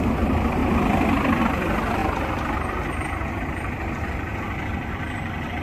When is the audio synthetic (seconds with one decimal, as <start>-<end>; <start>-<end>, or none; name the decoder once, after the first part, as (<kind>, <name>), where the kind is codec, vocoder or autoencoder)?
none